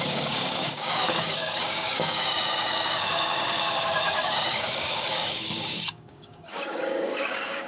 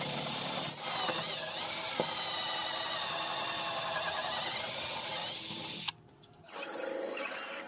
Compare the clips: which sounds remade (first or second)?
first